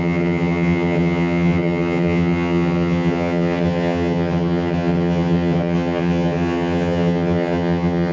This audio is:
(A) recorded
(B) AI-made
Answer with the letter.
B